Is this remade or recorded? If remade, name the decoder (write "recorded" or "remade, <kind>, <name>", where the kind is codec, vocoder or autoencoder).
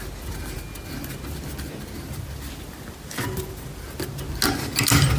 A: recorded